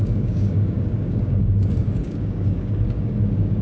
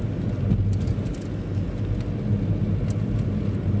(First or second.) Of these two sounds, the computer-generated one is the first